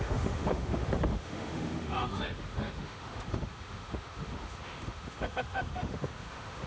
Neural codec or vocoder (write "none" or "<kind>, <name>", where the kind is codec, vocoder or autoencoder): autoencoder, DAC-VAE